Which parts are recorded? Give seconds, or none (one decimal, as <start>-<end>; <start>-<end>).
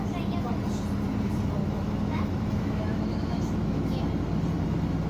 0.0-1.6; 4.0-5.1